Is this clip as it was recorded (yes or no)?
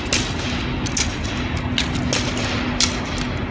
yes